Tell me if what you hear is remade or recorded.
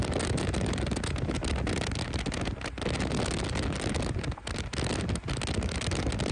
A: recorded